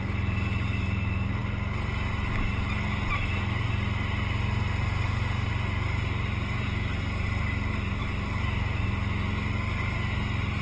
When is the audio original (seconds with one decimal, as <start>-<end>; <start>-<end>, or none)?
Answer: 0.0-10.6